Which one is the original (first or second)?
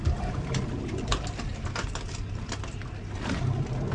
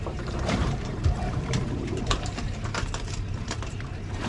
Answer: first